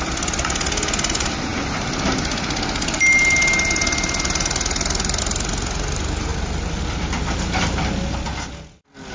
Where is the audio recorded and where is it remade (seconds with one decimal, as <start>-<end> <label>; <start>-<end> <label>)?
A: 0.0-9.1 recorded